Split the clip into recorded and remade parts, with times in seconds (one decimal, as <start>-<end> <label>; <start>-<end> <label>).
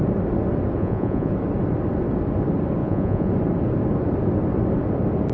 0.0-0.8 recorded; 0.8-1.3 remade; 1.3-2.8 recorded; 2.8-3.3 remade; 3.3-5.3 recorded